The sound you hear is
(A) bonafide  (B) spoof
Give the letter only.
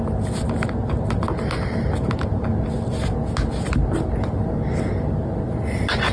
A